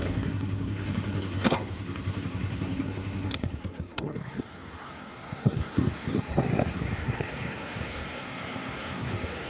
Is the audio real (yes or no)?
no